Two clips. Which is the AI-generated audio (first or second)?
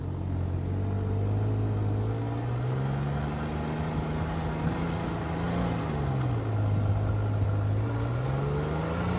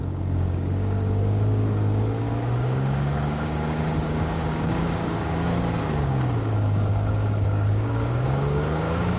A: second